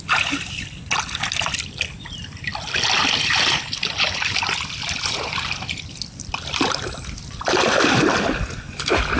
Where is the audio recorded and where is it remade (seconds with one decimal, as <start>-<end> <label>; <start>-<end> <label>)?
0.0-2.5 remade; 2.5-3.0 recorded; 3.0-9.2 remade